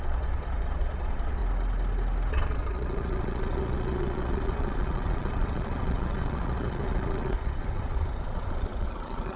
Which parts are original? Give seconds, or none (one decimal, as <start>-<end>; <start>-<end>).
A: 1.4-2.3